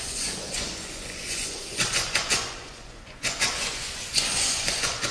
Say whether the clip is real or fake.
fake